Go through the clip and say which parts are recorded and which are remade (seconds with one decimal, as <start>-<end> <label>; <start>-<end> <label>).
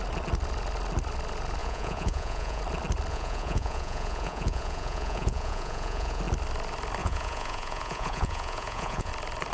0.0-1.6 recorded; 1.6-2.6 remade; 2.6-3.1 recorded; 3.1-6.2 remade; 6.2-7.0 recorded; 7.0-9.1 remade; 9.1-9.5 recorded